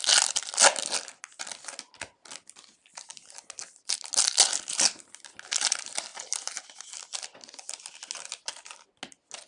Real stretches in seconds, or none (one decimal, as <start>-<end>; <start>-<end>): 0.0-9.5